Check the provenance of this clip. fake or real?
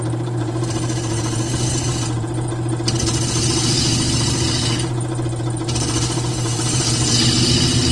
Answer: fake